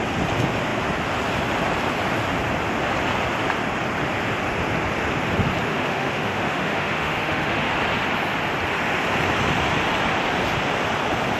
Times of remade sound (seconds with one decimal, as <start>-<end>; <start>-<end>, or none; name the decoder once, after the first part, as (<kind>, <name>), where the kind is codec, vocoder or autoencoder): 5.7-7.7 (autoencoder, DAC-VAE)